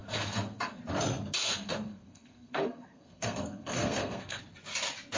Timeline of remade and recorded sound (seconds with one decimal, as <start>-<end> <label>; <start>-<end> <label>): 0.0-0.8 remade; 0.8-1.4 recorded; 1.4-4.4 remade; 4.4-5.2 recorded